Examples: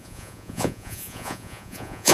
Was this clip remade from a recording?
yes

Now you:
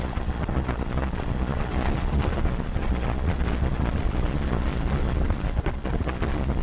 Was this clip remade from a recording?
yes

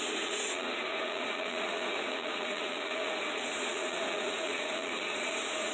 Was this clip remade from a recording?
yes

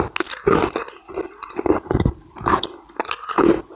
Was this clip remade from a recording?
no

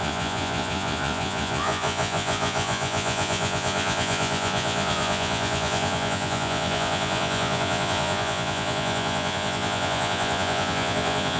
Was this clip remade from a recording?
yes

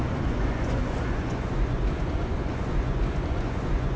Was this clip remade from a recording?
yes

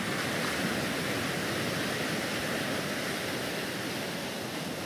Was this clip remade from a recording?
no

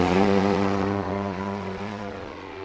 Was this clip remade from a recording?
yes